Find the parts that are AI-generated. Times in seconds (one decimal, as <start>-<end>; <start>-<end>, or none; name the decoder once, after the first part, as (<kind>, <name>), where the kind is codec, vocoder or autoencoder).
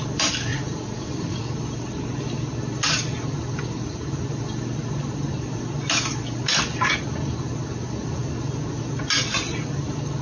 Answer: 0.5-1.4 (vocoder, Vocos)